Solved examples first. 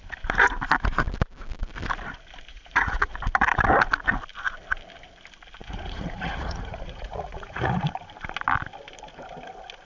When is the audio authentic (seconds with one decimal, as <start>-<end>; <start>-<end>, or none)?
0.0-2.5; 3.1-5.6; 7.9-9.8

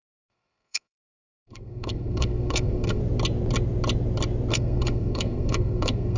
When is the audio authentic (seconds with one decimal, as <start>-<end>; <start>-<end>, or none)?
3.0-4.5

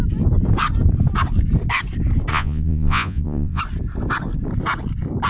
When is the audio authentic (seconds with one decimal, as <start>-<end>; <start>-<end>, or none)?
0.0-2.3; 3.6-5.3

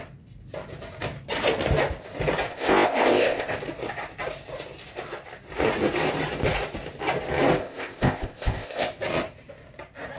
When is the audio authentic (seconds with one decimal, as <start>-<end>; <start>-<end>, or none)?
0.0-2.5; 3.6-7.6; 8.9-10.2

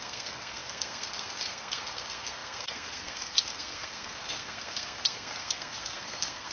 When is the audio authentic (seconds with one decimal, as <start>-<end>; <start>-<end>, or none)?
none

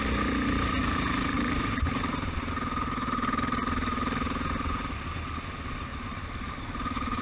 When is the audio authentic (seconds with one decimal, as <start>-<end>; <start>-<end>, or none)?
0.0-0.8; 5.1-5.9

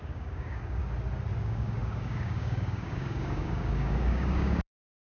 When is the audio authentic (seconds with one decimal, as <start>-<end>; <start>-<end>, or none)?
0.8-1.4

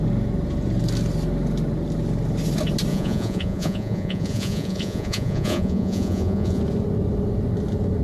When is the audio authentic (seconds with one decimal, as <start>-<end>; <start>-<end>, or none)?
0.0-2.9; 6.6-8.0